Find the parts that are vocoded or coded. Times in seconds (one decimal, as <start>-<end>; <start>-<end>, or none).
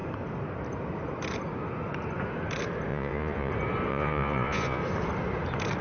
2.9-3.5; 3.9-4.8